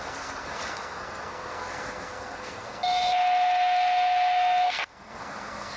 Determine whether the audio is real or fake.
fake